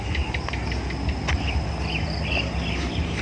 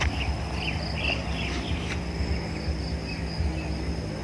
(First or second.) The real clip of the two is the second